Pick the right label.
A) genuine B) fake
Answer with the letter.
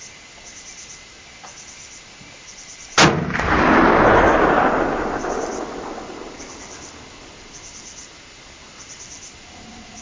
A